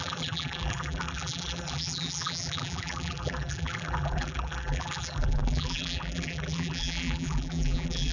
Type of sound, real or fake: fake